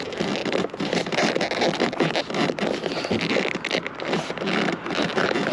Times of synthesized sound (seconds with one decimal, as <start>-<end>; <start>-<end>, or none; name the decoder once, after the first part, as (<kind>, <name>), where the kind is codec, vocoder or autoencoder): none